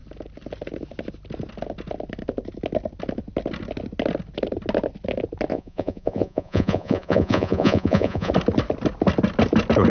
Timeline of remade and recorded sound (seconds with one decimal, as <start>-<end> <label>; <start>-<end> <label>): 0.0-5.5 recorded; 5.5-8.3 remade; 8.3-9.9 recorded